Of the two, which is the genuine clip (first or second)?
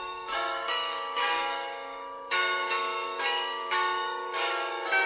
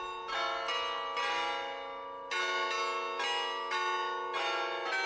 second